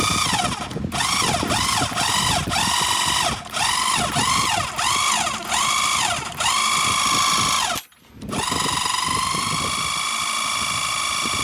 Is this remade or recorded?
recorded